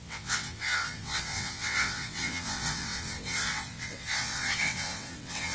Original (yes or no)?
no